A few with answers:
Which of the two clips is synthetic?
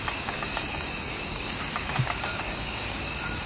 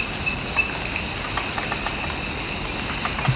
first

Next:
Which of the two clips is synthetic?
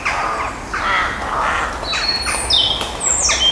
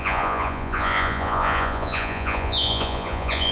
second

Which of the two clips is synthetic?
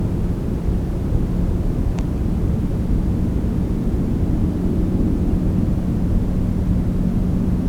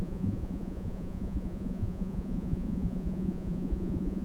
second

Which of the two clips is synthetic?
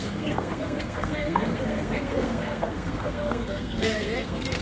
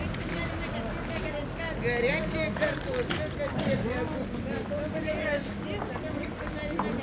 first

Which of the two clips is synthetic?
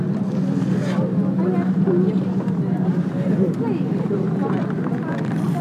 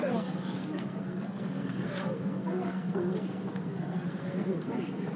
second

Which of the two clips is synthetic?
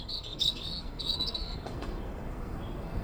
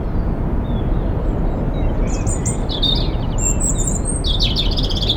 first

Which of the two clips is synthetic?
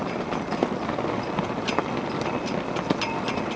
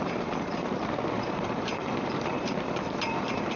second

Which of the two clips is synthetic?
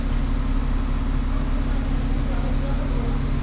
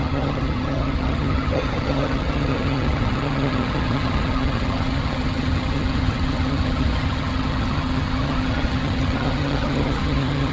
second